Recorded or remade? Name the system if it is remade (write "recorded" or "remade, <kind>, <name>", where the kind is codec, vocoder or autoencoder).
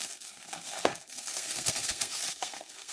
remade, codec, SNAC